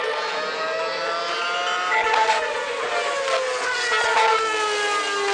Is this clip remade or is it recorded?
recorded